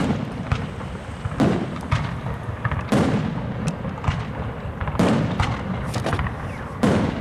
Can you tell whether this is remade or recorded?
remade